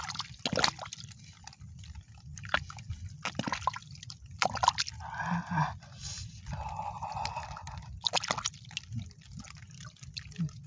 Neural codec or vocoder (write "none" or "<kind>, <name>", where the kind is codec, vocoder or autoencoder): none